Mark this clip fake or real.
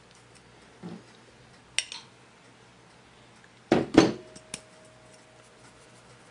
real